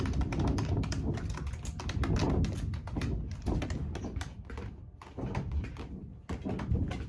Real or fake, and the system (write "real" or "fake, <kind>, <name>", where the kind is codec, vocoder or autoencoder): real